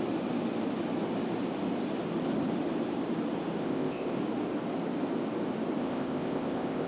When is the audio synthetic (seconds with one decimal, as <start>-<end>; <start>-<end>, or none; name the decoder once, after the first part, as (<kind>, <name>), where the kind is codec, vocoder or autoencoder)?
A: 3.6-4.2 (codec, ZipCodec); 5.8-6.9